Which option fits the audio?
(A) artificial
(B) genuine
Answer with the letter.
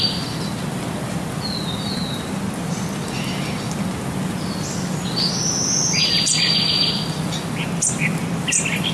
B